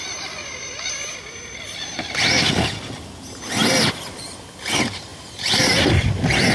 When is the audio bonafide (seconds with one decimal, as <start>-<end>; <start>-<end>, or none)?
0.0-6.5